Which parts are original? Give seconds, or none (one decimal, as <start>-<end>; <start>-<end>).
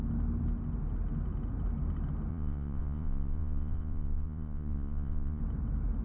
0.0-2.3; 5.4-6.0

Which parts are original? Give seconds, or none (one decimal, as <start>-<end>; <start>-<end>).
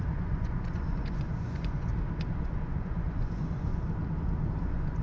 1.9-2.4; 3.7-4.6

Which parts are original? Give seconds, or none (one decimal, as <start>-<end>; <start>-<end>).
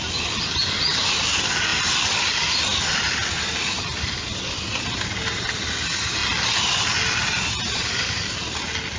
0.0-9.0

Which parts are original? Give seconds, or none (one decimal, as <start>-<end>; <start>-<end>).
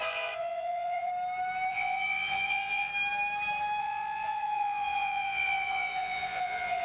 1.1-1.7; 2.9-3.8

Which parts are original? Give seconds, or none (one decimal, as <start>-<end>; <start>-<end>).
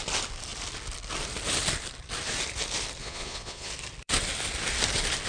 0.0-3.0; 3.7-5.3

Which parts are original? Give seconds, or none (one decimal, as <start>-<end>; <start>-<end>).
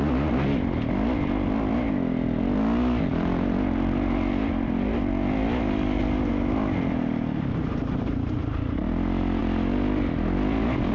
0.0-10.9